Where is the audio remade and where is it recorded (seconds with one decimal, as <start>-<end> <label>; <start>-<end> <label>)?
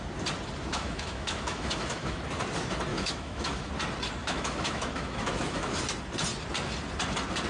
0.0-0.7 recorded; 0.7-2.2 remade; 2.2-2.9 recorded; 2.9-3.7 remade; 3.7-4.2 recorded; 4.2-5.8 remade; 5.8-7.5 recorded